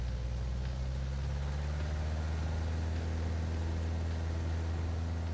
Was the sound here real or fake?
real